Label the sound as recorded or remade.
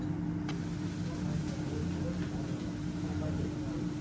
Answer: recorded